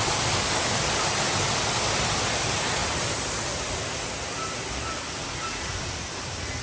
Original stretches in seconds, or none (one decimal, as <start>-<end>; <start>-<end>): 0.0-6.6